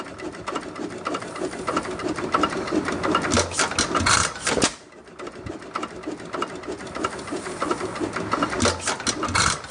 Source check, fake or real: real